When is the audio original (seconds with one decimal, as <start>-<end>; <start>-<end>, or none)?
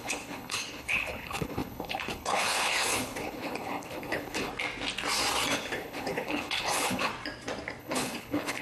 4.5-5.5; 7.1-7.8